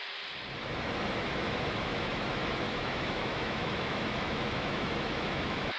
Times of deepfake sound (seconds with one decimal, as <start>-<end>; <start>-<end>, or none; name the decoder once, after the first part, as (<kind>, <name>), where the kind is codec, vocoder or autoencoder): 1.1-5.8 (autoencoder, DAC-VAE)